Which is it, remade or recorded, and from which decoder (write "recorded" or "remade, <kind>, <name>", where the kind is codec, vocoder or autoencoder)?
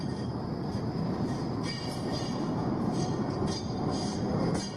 remade, vocoder, BigVGAN v2